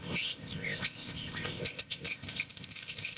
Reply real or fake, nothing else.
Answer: fake